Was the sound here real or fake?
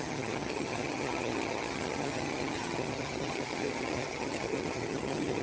fake